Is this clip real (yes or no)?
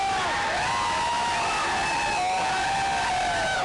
yes